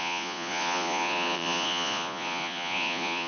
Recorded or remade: remade